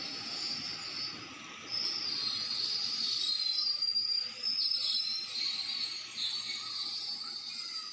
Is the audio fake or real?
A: real